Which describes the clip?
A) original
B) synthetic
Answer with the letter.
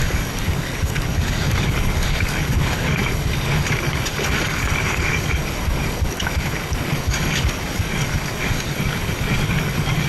B